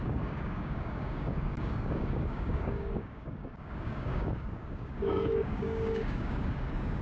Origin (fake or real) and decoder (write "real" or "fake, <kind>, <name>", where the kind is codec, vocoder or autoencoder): fake, codec, DAC